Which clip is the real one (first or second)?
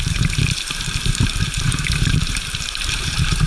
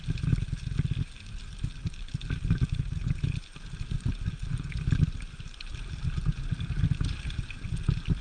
second